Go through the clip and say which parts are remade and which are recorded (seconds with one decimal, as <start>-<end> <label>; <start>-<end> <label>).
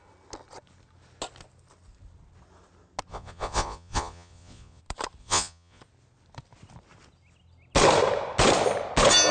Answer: 0.0-3.1 recorded; 3.1-4.8 remade; 4.8-5.2 recorded; 5.2-5.8 remade; 5.8-9.3 recorded